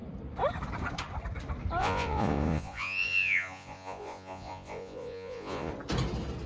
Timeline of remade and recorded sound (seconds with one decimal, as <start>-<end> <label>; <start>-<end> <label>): 0.0-1.8 recorded; 1.8-5.7 remade; 5.7-6.5 recorded